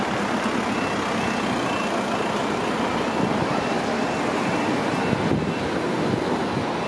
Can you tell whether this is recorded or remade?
recorded